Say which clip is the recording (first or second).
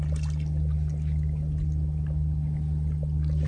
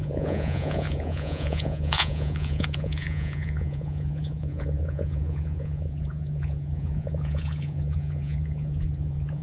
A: first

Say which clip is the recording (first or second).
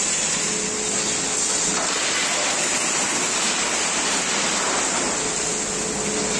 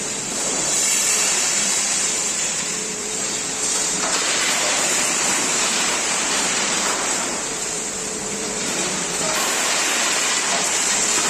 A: first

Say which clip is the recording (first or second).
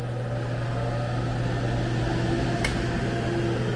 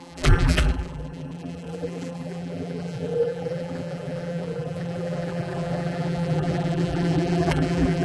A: first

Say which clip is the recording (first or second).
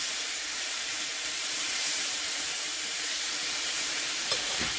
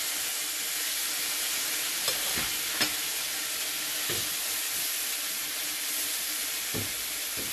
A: second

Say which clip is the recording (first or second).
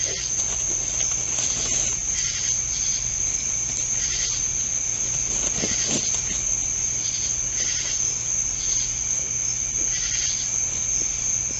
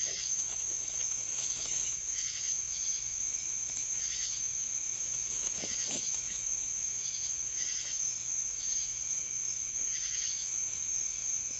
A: first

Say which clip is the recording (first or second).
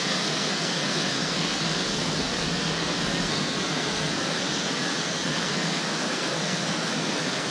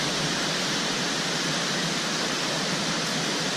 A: second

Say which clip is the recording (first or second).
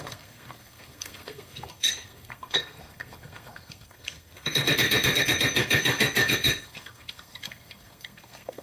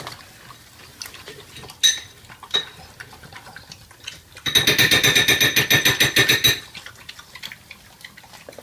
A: second